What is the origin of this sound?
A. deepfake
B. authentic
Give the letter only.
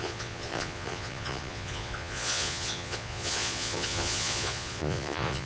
A